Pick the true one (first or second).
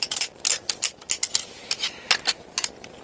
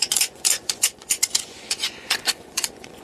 first